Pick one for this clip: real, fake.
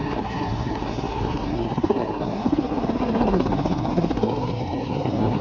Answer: fake